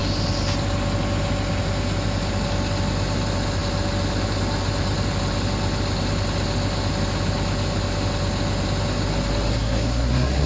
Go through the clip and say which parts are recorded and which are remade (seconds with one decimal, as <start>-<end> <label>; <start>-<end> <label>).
0.0-9.5 recorded; 9.5-10.5 remade